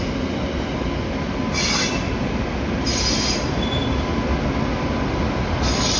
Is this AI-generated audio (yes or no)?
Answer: no